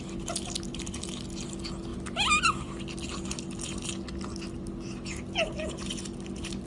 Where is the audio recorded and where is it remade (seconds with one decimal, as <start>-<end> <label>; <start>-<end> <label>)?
0.0-6.7 recorded